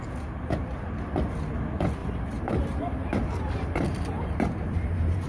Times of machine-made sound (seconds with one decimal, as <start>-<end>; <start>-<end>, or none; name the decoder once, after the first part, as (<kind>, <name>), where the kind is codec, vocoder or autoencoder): 2.0-5.3 (vocoder, BigVGAN v2)